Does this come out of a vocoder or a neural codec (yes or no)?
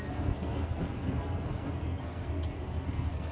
yes